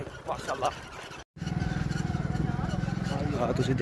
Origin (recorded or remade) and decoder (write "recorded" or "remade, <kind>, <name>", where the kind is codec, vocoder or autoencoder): recorded